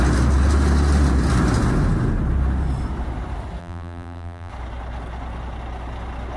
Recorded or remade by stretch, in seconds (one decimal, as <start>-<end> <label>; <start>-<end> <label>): 0.0-3.6 recorded; 3.6-4.5 remade; 4.5-6.4 recorded